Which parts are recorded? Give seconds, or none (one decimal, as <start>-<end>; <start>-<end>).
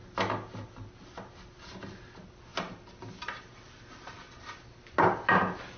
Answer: 0.0-2.5; 3.0-5.8